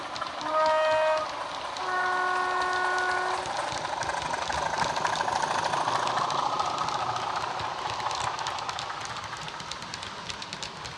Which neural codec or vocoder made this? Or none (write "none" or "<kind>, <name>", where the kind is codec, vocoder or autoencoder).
none